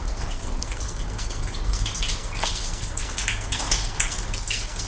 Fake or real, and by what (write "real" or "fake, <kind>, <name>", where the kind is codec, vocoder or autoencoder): fake, codec, SNAC